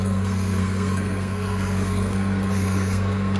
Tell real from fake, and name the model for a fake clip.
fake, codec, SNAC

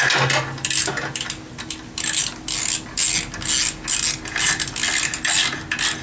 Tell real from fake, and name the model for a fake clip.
real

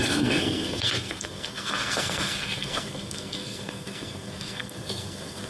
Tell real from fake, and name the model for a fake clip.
fake, codec, SNAC